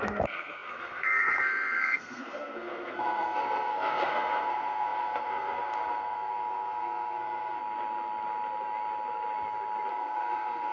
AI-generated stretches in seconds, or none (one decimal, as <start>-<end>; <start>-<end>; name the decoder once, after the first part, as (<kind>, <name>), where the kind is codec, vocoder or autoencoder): 0.0-7.6 (codec, SNAC); 9.9-10.7